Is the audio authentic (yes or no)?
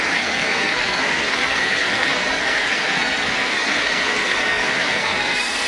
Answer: no